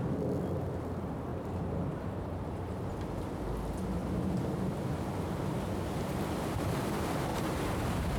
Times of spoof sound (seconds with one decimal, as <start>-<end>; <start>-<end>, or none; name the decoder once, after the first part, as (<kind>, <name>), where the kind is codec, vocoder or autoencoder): 1.3-2.9 (vocoder, BigVGAN v2); 7.3-8.2